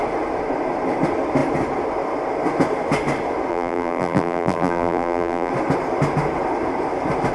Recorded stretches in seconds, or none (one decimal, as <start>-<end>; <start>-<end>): 0.0-3.5; 5.5-7.3